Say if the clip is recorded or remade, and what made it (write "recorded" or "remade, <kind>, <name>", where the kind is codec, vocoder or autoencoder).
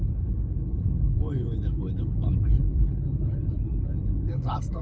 remade, codec, HILCodec